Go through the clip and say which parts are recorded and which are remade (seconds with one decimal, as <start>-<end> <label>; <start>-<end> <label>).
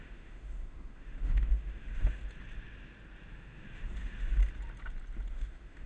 0.0-2.2 remade; 2.2-3.3 recorded; 3.3-4.4 remade; 4.4-5.3 recorded; 5.3-5.9 remade